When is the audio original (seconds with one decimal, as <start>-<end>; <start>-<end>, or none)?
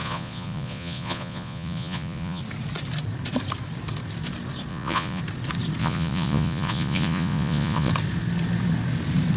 2.4-4.7; 5.2-5.8; 7.9-9.4